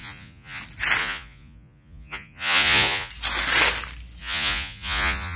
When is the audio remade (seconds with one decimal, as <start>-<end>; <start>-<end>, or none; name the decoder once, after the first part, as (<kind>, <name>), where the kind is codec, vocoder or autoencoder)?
0.0-0.6 (vocoder, Vocos); 1.0-3.1; 4.2-5.4